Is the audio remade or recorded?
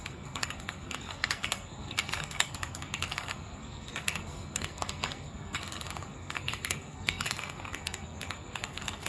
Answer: remade